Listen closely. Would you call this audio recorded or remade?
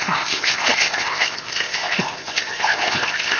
remade